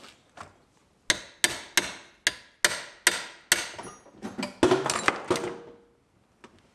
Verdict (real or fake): real